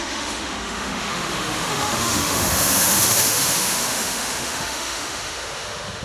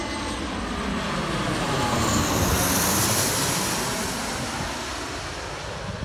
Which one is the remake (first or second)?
first